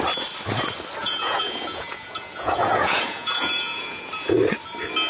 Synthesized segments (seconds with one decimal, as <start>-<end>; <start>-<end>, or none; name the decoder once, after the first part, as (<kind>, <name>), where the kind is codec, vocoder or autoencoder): 1.0-4.1 (vocoder, Vocos)

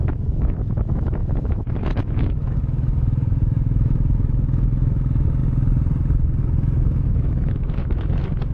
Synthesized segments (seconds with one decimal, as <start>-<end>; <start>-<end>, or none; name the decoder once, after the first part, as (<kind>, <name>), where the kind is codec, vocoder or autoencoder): 0.0-5.4 (autoencoder, DAC-VAE); 6.4-8.5

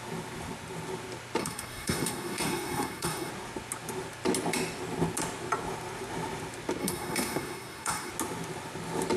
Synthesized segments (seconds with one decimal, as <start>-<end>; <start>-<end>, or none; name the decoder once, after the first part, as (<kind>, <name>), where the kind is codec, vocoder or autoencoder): 1.4-3.3 (codec, SNAC); 6.8-8.1

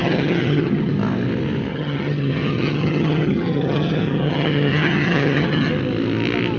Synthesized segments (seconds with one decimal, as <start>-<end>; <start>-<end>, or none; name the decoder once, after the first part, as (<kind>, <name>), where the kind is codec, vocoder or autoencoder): 0.0-0.9 (vocoder, HiFi-GAN); 1.7-5.7

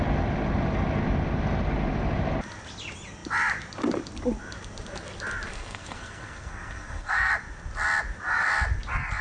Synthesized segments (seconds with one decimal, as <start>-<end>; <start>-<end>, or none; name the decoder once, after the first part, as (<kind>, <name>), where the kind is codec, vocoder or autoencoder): 5.5-7.3 (codec, SNAC)

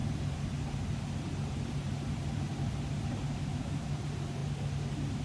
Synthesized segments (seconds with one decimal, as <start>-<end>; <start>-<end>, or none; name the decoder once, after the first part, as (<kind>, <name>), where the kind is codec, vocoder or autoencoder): 3.5-4.0 (autoencoder, DAC-VAE)